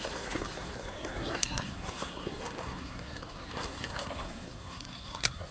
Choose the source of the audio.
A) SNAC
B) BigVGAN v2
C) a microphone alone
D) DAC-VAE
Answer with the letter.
A